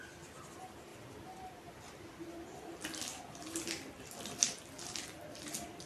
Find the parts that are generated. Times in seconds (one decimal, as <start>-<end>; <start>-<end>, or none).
none